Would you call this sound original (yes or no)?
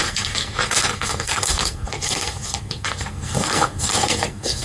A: no